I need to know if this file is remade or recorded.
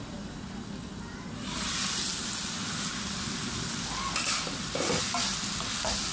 recorded